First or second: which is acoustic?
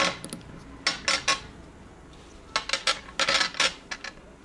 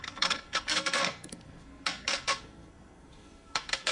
first